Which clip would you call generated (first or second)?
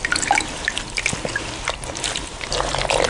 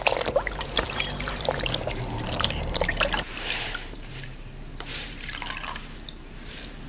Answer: second